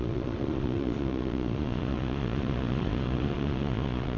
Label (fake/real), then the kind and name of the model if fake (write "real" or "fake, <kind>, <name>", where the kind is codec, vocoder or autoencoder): fake, vocoder, Vocos